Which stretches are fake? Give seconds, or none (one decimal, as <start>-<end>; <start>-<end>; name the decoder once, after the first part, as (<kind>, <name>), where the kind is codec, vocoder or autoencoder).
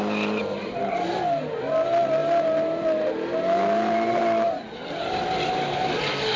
none